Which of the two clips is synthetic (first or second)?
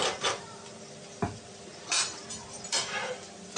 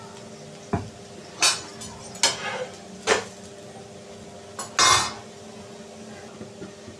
first